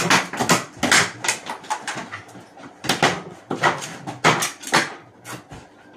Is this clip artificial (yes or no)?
no